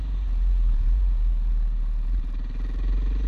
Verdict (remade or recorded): remade